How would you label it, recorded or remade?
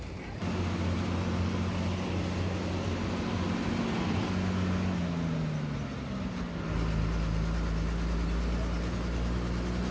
recorded